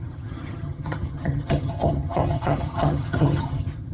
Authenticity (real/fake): fake